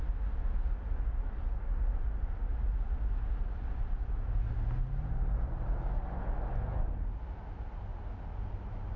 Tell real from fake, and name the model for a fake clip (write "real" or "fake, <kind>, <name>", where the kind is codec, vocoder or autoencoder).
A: real